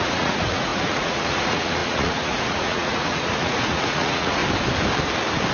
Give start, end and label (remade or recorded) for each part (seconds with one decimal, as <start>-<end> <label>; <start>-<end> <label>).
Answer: 0.0-4.4 remade; 4.4-5.5 recorded